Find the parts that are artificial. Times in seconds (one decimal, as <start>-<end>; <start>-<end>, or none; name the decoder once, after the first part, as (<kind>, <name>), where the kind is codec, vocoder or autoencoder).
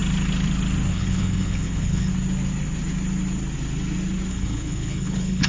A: 0.9-2.1 (codec, HILCodec); 4.3-5.5